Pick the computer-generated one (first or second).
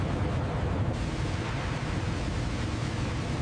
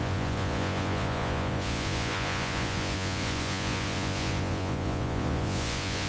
second